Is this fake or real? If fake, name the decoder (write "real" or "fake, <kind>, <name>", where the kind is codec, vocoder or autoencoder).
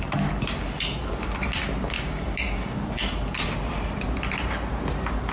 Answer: real